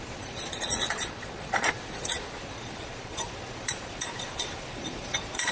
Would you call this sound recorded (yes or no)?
no